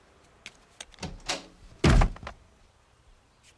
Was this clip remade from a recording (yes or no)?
no